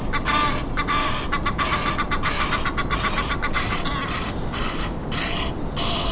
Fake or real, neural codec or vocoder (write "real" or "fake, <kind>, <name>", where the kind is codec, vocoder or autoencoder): real